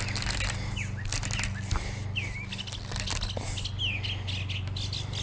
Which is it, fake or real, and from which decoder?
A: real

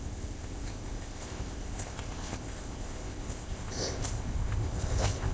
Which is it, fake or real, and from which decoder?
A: fake, codec, ZipCodec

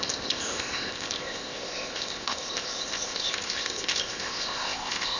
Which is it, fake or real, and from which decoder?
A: fake, codec, ZipCodec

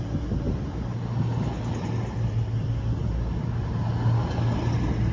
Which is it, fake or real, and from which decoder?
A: real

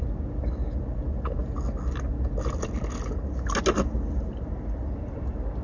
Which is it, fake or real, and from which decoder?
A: real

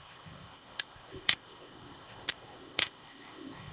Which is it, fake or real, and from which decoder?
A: fake, codec, ZipCodec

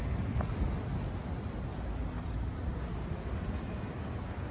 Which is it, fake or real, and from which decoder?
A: real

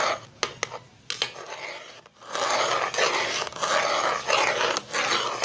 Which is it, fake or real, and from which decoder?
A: real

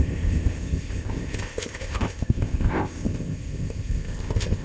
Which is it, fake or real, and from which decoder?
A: fake, codec, ZipCodec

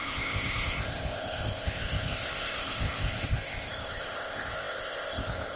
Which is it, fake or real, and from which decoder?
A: fake, codec, ZipCodec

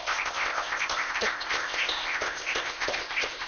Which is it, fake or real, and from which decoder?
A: fake, codec, ZipCodec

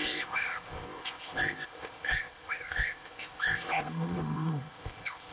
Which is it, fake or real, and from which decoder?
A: fake, codec, ZipCodec